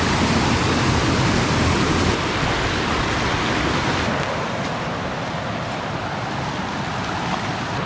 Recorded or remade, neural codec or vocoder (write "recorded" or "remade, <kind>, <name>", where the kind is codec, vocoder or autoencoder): recorded